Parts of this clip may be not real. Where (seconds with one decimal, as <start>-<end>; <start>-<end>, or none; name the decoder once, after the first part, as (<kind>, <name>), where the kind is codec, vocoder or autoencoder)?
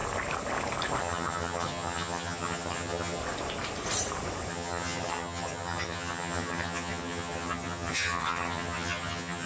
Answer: 1.0-3.2 (vocoder, HiFi-GAN); 4.5-9.5